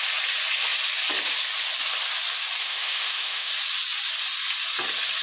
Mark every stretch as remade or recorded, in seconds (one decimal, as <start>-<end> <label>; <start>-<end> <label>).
0.0-2.6 recorded; 2.6-3.5 remade; 3.5-5.2 recorded